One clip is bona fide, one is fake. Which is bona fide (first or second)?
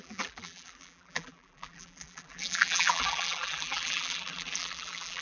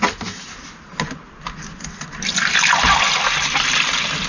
second